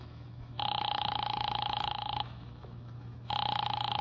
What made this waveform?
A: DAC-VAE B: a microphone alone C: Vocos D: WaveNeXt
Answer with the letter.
A